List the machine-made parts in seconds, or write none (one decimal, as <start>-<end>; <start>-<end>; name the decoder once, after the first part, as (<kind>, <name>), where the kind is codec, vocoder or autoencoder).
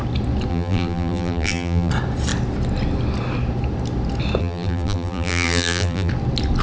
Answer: 0.5-1.9 (vocoder, BigVGAN v2); 4.4-6.1